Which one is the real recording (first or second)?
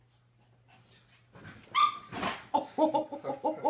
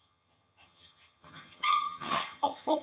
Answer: first